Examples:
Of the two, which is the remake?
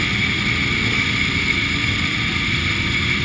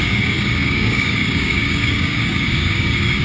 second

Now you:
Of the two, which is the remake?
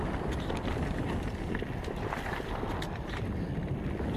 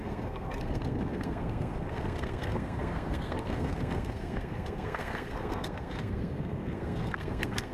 second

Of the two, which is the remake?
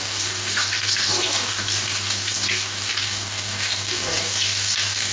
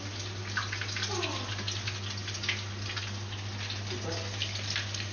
first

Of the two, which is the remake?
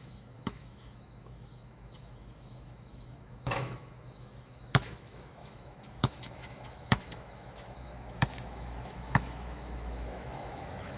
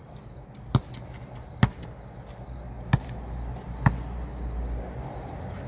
first